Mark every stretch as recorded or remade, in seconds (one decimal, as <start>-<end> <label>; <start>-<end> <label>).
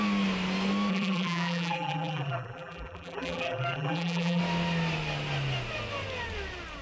0.0-0.9 recorded; 0.9-4.4 remade; 4.4-6.8 recorded